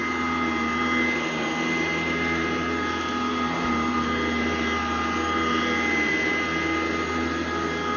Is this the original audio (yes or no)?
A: yes